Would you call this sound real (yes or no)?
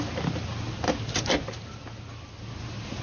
yes